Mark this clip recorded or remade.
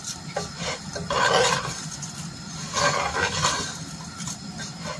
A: recorded